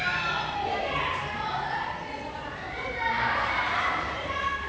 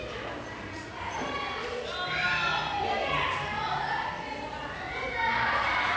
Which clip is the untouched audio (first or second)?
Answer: second